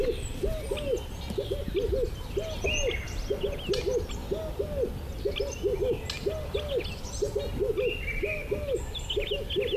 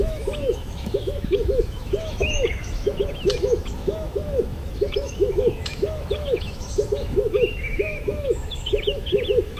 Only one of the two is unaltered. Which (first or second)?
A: first